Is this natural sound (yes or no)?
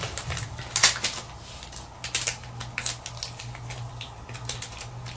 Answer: yes